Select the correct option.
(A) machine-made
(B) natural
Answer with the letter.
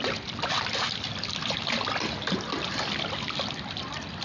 B